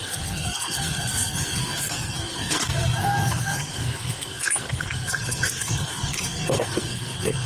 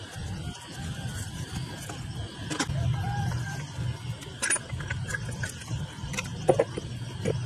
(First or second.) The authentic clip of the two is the second